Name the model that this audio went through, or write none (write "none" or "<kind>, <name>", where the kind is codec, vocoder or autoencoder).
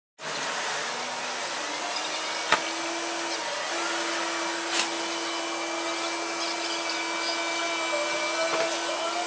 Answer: none